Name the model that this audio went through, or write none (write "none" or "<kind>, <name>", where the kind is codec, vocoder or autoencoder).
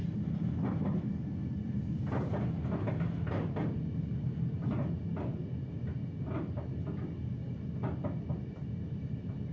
none